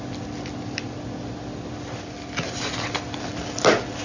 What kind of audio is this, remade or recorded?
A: recorded